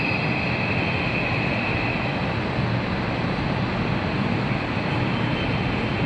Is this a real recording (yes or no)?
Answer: yes